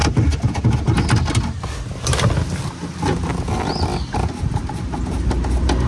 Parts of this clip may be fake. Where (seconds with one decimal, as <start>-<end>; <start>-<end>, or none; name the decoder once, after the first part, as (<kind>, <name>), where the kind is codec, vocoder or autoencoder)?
none